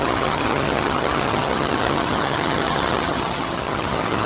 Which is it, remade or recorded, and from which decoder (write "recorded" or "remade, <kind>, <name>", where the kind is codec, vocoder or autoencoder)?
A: remade, vocoder, HiFi-GAN